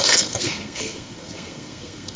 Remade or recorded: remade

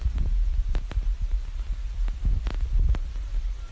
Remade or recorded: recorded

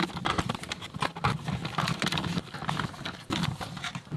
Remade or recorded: recorded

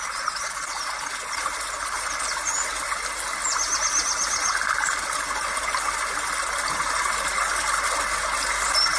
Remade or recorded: recorded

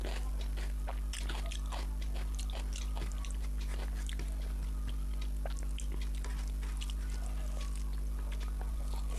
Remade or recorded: recorded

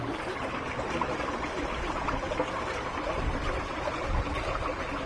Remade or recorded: recorded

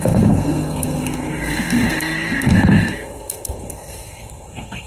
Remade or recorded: remade